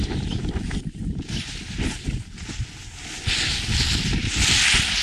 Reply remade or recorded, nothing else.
recorded